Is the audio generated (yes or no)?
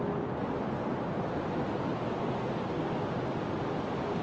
no